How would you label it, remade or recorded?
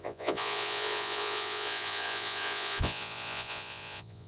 remade